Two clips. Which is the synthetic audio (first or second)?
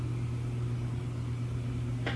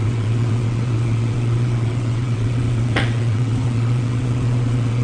second